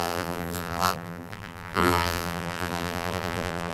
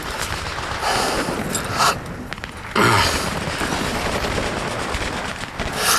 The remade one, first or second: first